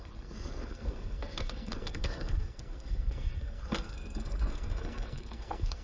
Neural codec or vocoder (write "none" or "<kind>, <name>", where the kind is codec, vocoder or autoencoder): codec, SNAC